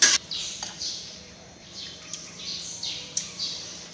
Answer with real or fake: fake